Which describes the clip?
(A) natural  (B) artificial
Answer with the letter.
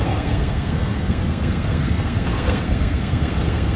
B